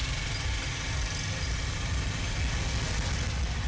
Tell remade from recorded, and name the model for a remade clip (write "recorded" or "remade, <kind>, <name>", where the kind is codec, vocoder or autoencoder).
recorded